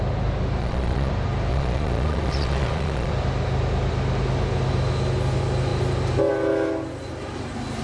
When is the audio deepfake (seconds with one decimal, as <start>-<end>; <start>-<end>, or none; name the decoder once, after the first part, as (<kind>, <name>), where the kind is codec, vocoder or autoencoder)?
0.6-1.1 (vocoder, Vocos); 1.5-3.1